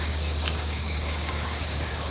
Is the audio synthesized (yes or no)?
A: yes